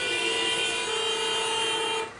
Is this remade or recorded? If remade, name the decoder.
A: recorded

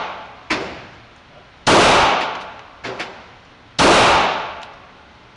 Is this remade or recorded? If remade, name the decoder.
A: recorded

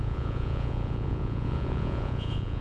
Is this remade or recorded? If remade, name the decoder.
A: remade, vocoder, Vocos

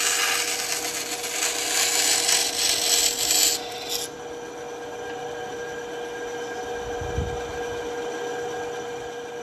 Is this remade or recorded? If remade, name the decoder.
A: recorded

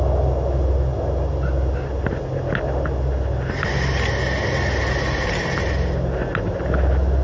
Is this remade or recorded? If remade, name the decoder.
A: recorded